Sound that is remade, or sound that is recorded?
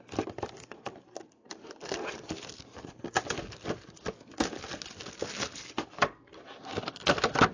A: recorded